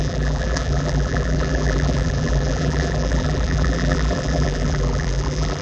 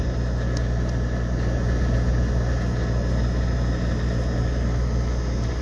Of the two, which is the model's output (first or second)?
first